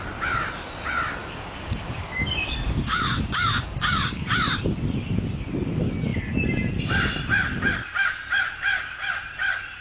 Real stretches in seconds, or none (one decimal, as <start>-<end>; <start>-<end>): 0.0-1.2; 4.3-9.8